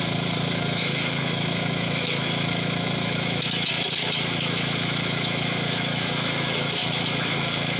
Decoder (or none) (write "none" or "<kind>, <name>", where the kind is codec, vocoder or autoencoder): autoencoder, DAC-VAE